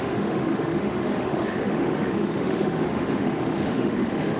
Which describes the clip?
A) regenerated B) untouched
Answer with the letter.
A